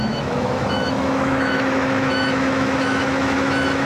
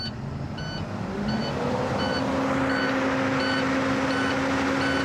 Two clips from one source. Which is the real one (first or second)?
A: second